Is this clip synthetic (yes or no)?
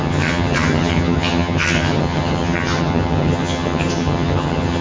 yes